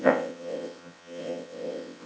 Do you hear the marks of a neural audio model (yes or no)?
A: yes